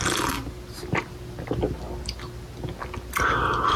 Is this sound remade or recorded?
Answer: recorded